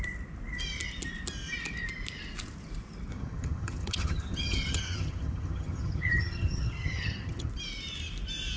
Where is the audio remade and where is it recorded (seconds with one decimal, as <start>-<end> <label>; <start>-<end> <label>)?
0.0-3.1 recorded; 3.1-7.5 remade; 7.5-8.6 recorded